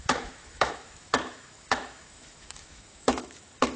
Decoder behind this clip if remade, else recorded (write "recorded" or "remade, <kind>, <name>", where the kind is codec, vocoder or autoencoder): remade, autoencoder, DAC-VAE